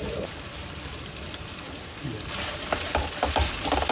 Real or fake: real